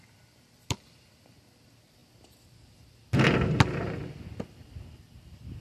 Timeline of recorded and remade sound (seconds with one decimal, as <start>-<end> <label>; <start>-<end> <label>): 0.0-5.6 recorded